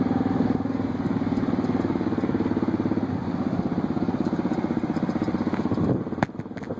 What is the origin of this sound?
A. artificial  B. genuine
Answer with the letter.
B